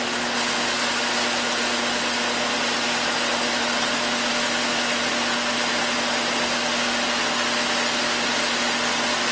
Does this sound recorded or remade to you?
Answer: recorded